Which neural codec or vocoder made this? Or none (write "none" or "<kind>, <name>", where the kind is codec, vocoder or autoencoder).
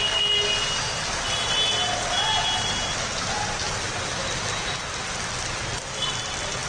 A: none